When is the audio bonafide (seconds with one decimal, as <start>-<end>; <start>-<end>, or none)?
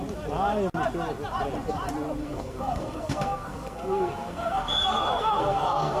0.0-2.2